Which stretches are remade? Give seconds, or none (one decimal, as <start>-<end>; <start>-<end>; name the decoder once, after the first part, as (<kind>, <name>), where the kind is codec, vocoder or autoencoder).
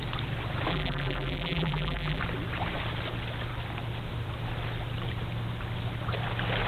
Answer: 0.7-2.2 (vocoder, BigVGAN v2)